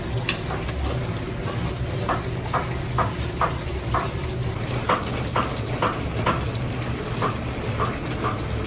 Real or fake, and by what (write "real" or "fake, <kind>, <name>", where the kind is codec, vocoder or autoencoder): real